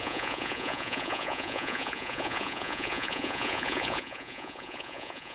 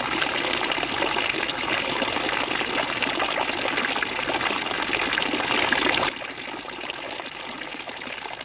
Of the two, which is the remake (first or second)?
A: first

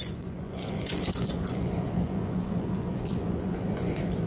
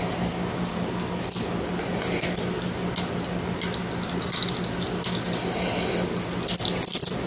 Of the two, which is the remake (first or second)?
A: first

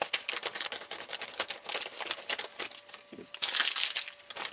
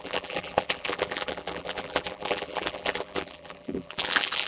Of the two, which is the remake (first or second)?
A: second